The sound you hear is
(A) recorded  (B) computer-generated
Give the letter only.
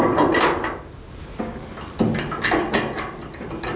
A